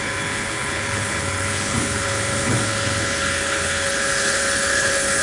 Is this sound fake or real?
fake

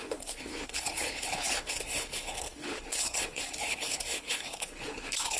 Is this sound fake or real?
fake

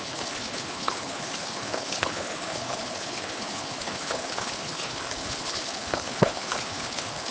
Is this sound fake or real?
fake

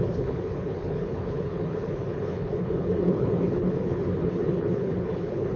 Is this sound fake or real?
fake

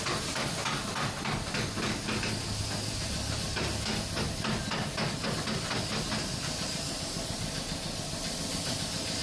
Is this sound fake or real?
real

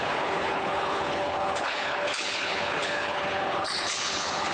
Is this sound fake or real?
fake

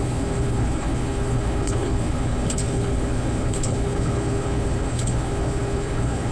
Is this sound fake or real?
fake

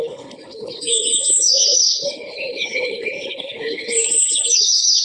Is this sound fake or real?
fake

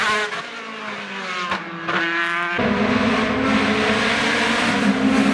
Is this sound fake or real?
real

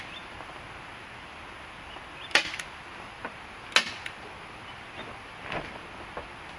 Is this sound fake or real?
real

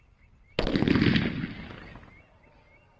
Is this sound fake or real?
real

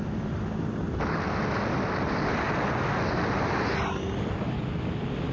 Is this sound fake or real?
real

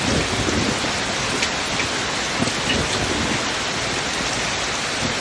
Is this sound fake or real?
real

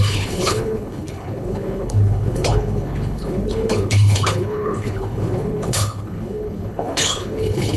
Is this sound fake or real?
fake